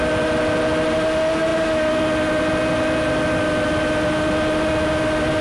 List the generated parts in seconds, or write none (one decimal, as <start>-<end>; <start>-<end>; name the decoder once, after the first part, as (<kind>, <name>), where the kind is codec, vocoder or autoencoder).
none